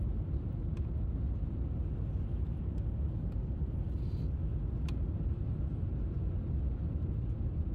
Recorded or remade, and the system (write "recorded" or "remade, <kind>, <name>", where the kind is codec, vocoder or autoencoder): recorded